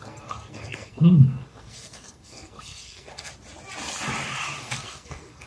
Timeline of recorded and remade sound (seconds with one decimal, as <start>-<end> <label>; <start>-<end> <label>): 0.0-3.3 remade; 3.3-4.6 recorded; 4.6-5.5 remade